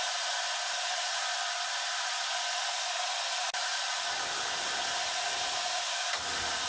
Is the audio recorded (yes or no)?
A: yes